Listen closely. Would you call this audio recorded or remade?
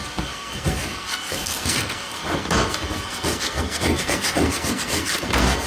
remade